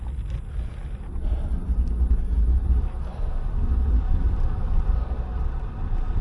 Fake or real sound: real